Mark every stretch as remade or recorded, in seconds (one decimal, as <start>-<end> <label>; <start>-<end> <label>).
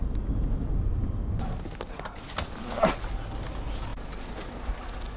0.0-5.2 recorded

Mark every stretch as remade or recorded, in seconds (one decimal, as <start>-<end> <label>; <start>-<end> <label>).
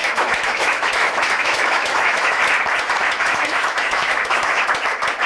0.0-2.4 remade; 2.4-3.0 recorded; 3.0-4.7 remade; 4.7-5.3 recorded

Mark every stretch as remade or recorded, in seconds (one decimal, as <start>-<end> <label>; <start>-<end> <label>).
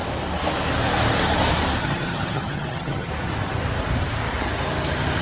0.0-1.8 recorded; 1.8-3.1 remade; 3.1-5.2 recorded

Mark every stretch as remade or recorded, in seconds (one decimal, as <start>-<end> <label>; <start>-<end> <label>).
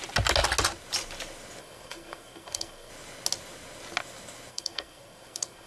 0.0-1.6 recorded; 1.6-2.9 remade; 2.9-4.5 recorded; 4.5-5.7 remade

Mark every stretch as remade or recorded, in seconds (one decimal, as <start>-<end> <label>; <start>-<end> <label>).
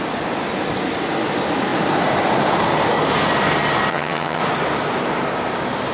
0.0-3.9 recorded; 3.9-4.4 remade; 4.4-5.9 recorded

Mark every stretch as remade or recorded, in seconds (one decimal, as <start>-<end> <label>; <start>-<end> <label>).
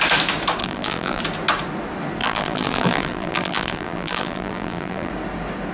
0.0-0.6 recorded; 0.6-1.2 remade; 1.2-2.2 recorded; 2.2-5.1 remade; 5.1-5.7 recorded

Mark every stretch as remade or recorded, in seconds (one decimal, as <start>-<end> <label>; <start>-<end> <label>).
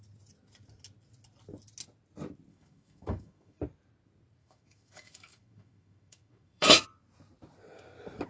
0.0-2.5 recorded; 2.5-3.6 remade; 3.6-4.4 recorded; 4.4-6.8 remade; 6.8-8.3 recorded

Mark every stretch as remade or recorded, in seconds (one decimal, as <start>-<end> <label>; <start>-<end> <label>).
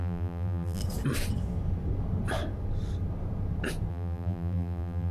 0.0-0.8 remade; 0.8-3.9 recorded; 3.9-5.1 remade